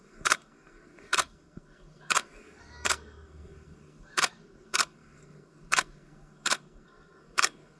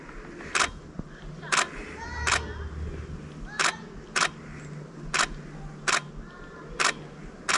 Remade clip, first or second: first